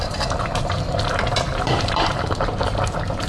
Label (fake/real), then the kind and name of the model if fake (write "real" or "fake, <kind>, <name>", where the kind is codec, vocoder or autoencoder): fake, vocoder, BigVGAN v2